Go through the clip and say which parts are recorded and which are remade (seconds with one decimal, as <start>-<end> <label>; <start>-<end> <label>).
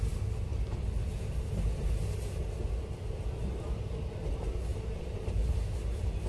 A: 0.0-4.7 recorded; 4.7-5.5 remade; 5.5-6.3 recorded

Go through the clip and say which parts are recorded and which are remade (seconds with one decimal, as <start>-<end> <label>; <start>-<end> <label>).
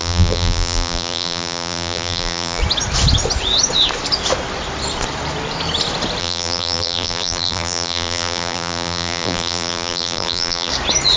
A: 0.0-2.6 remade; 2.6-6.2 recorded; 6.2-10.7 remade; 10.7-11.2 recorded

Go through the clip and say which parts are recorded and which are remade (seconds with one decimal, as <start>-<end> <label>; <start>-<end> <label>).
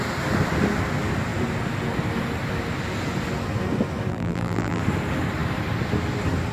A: 0.0-4.1 recorded; 4.1-4.8 remade; 4.8-6.5 recorded